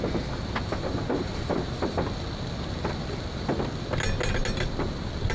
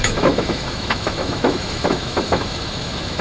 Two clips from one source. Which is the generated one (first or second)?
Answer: second